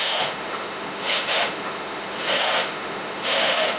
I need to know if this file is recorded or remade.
remade